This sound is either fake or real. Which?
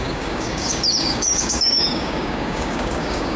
fake